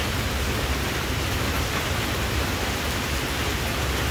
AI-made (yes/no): no